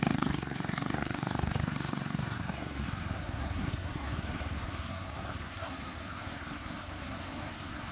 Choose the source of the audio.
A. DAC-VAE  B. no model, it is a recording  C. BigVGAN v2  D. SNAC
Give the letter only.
D